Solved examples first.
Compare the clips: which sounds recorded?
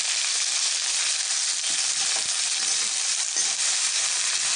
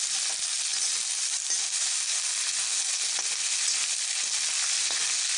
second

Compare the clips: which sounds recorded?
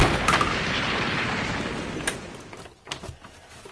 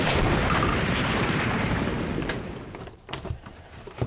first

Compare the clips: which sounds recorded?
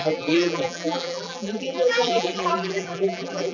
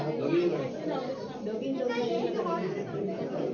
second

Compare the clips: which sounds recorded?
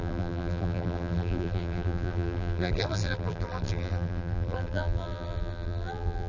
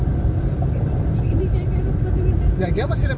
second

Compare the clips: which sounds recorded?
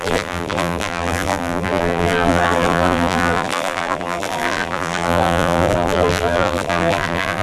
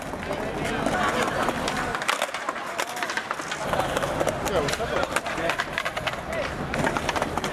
second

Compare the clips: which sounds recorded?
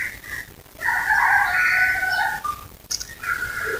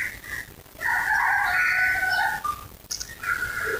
second